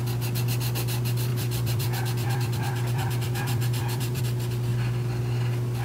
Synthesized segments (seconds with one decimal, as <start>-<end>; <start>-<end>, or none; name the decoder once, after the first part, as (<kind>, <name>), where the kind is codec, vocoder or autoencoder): 1.3-4.2 (vocoder, BigVGAN v2)

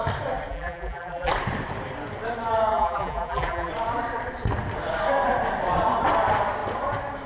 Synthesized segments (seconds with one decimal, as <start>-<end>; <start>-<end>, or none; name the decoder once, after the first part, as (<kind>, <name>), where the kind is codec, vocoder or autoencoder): 0.5-1.3 (vocoder, BigVGAN v2); 2.7-3.7